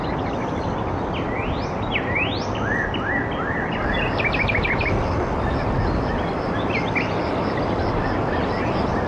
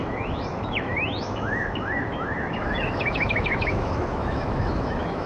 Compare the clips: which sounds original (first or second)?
first